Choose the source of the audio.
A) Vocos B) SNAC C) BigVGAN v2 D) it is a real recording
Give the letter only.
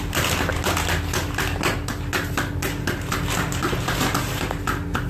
D